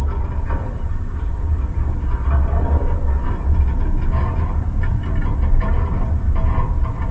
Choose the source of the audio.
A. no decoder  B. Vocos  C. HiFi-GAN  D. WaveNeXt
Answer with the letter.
A